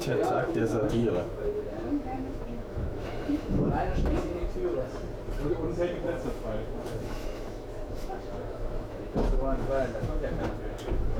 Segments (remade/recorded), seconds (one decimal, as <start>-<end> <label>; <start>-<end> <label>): 0.0-4.5 remade; 4.5-6.3 recorded; 6.3-11.2 remade